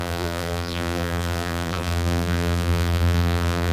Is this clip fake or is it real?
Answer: fake